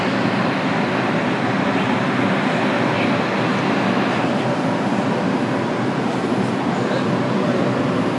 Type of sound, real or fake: real